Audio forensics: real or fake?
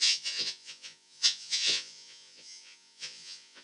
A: fake